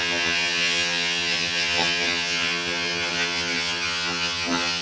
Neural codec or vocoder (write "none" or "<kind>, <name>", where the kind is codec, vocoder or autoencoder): vocoder, HiFi-GAN